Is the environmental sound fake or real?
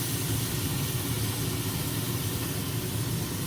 real